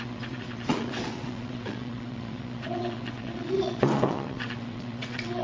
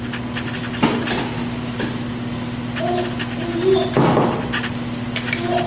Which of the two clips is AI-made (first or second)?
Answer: first